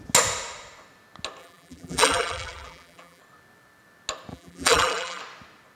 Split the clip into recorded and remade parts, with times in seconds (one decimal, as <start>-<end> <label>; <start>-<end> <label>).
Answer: 0.0-1.4 recorded; 1.4-3.2 remade; 3.2-4.3 recorded; 4.3-5.2 remade; 5.2-5.8 recorded